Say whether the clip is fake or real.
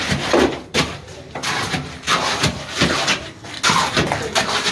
real